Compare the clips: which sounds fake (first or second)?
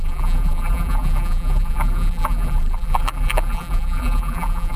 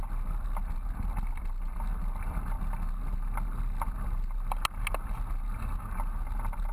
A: first